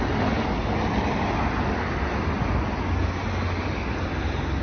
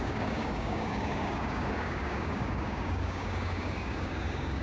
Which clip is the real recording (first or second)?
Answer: first